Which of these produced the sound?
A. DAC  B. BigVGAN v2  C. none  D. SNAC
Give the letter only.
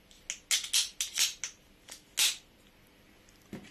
C